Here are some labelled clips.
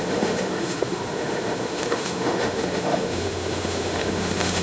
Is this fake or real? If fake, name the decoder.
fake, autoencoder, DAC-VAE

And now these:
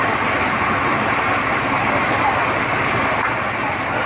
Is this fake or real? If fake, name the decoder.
real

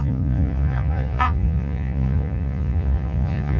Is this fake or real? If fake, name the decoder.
fake, vocoder, Vocos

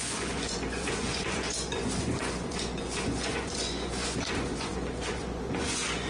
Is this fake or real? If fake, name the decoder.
fake, vocoder, Vocos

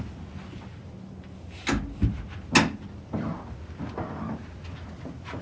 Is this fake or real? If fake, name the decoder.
real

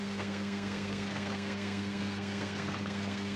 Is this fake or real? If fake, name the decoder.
fake, codec, SNAC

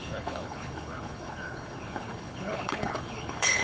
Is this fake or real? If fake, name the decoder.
fake, codec, HILCodec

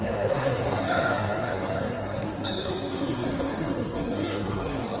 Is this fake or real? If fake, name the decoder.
fake, codec, SNAC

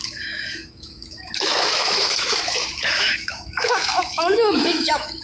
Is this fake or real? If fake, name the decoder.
fake, autoencoder, DAC-VAE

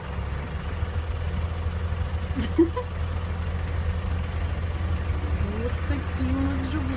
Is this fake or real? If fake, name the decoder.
real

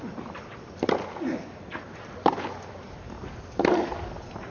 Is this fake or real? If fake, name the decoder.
real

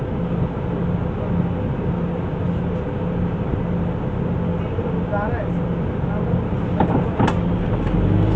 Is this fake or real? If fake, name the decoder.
real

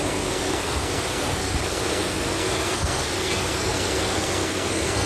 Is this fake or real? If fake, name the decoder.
fake, codec, SNAC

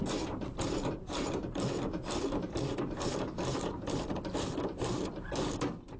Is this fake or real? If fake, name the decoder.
fake, vocoder, BigVGAN v2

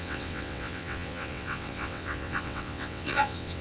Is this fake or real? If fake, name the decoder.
fake, vocoder, WaveNeXt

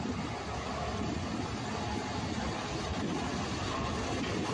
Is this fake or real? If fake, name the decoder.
real